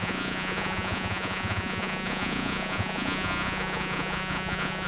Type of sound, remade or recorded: remade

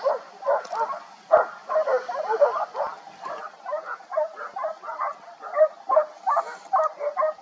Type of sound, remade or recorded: recorded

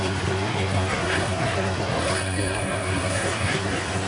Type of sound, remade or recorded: remade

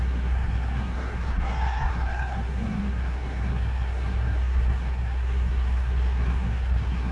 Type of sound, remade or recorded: remade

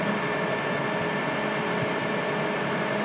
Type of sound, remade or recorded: recorded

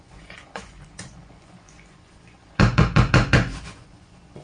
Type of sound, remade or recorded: remade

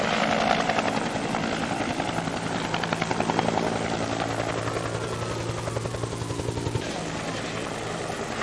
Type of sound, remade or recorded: recorded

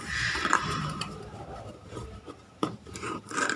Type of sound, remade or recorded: remade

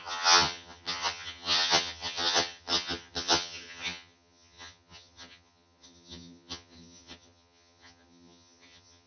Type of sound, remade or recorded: remade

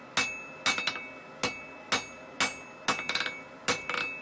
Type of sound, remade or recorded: recorded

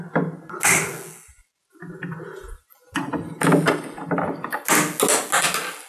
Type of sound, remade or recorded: recorded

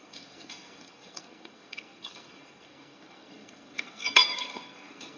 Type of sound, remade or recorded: remade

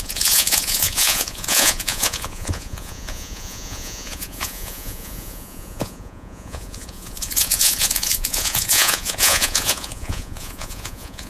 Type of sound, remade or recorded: remade